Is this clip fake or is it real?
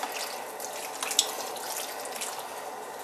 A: real